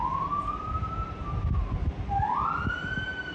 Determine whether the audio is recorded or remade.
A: recorded